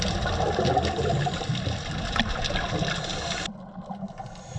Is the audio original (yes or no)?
yes